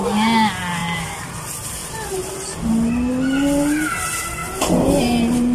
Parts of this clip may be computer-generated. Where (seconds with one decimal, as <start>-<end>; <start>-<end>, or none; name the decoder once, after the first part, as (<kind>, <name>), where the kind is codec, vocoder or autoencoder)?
none